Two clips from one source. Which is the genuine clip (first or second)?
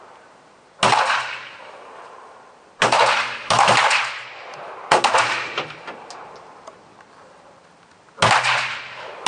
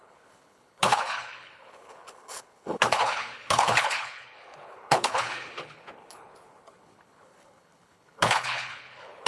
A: first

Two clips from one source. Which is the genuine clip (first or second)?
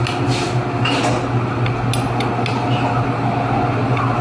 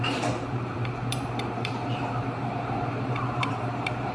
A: first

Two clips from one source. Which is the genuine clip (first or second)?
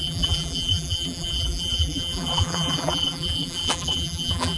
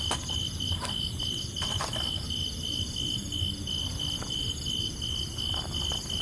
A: second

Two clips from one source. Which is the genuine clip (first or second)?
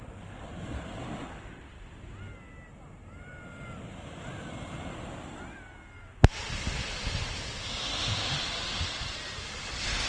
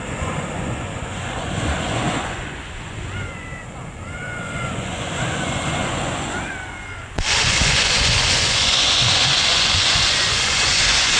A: first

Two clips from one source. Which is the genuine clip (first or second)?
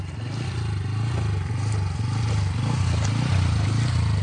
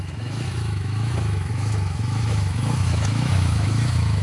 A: first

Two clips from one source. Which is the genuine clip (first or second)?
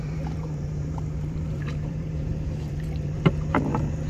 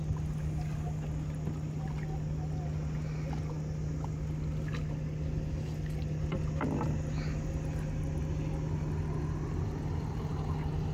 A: second